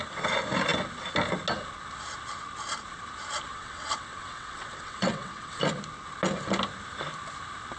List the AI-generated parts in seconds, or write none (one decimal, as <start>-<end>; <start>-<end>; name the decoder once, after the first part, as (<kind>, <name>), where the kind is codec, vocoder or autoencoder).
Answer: 3.5-5.6 (vocoder, WaveNeXt)